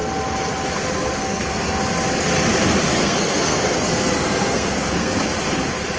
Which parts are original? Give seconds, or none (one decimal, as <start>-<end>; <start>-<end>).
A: 0.0-1.2; 1.8-2.9; 5.2-6.0